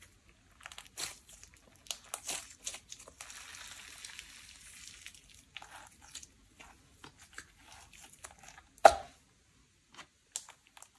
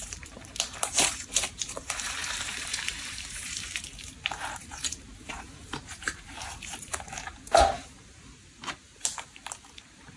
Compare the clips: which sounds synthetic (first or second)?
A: second